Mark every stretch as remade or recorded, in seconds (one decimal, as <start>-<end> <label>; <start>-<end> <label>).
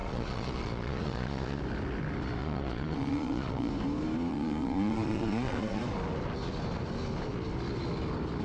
0.0-1.6 remade; 1.6-2.4 recorded; 2.4-3.7 remade; 3.7-4.3 recorded; 4.3-5.8 remade; 5.8-8.4 recorded